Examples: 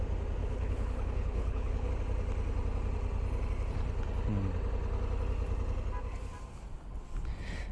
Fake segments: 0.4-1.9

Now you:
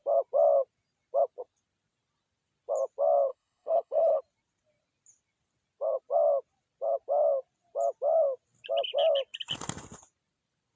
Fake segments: 3.3-4.2

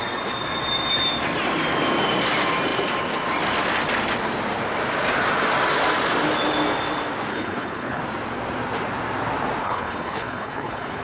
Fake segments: 7.3-8.0; 9.6-11.0

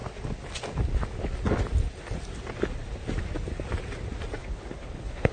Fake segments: 4.4-5.3